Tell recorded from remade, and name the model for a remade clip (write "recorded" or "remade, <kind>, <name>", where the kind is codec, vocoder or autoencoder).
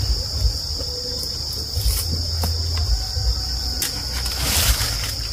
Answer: recorded